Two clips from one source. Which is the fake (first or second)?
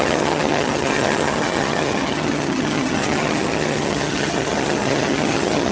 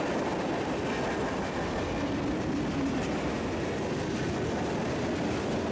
first